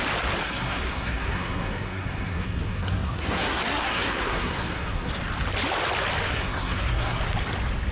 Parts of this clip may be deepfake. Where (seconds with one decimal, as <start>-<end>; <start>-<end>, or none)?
0.4-5.1; 6.3-7.2